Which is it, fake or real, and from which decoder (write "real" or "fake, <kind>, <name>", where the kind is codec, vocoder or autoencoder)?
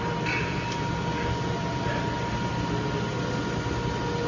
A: real